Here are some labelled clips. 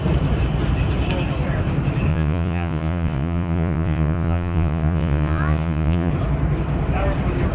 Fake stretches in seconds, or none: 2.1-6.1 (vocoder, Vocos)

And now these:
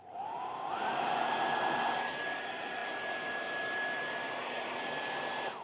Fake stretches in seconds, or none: none

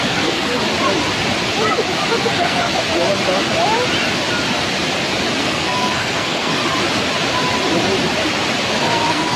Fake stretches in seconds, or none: 0.0-0.6 (codec, SNAC); 2.2-2.7; 5.4-6.6; 8.8-9.4

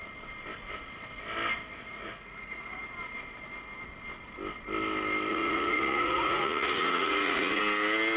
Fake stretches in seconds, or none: 1.9-2.8 (vocoder, Vocos); 5.3-7.6

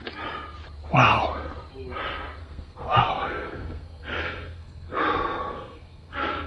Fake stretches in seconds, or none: 2.4-6.5 (codec, SNAC)

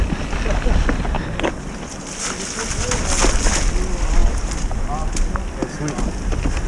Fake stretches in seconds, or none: 4.2-4.8 (vocoder, BigVGAN v2)

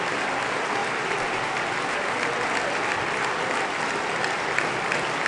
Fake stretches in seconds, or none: none